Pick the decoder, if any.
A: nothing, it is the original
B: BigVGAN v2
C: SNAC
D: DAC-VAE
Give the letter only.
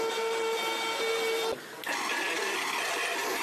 A